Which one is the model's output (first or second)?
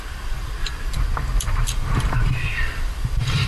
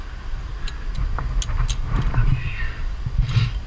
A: first